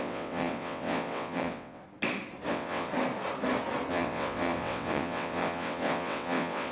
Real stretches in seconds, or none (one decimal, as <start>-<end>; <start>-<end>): 1.8-2.5; 2.9-3.9